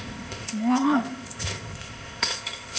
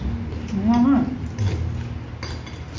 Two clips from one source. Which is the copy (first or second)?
first